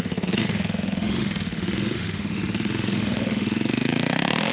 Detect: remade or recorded remade